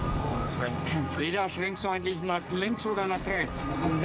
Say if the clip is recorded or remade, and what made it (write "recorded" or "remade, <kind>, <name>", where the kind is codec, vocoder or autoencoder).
remade, codec, SNAC